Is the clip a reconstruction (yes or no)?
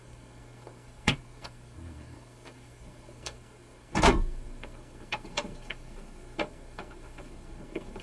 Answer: yes